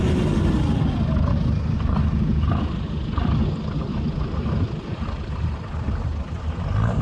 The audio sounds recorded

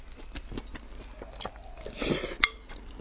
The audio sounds recorded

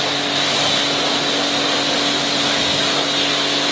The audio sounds recorded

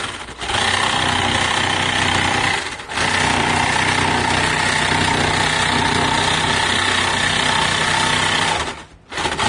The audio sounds recorded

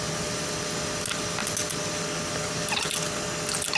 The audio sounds recorded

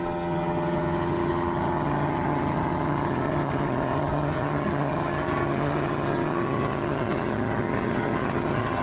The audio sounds remade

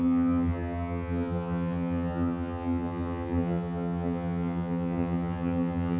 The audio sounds remade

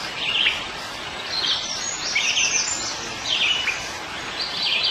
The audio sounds recorded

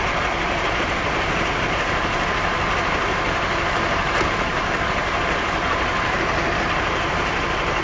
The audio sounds remade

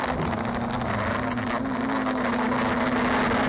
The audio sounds recorded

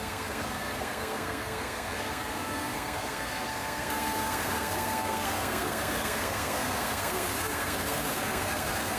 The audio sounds remade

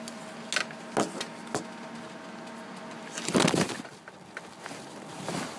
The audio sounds recorded